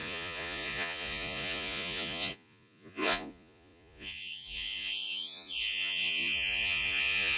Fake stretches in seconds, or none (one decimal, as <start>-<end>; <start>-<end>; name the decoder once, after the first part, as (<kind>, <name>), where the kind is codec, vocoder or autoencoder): 0.0-7.4 (vocoder, Vocos)